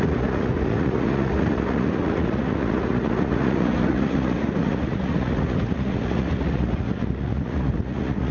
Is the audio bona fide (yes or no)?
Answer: no